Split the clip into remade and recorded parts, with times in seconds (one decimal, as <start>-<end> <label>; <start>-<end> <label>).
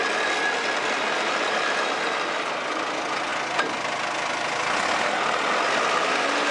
0.0-6.5 recorded